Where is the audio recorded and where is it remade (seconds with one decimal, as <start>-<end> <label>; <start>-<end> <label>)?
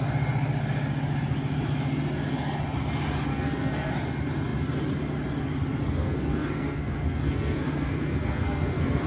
0.0-3.3 recorded; 3.3-3.9 remade; 3.9-6.0 recorded; 6.0-9.1 remade